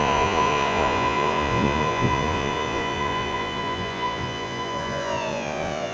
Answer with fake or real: fake